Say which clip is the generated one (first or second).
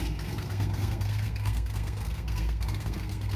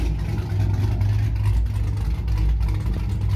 first